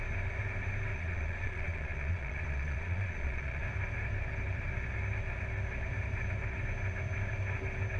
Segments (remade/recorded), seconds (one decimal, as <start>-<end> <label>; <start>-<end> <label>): 0.0-0.9 recorded; 0.9-3.6 remade; 3.6-8.0 recorded